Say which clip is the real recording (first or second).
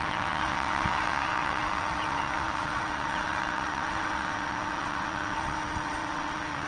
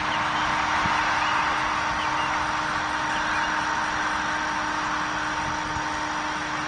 second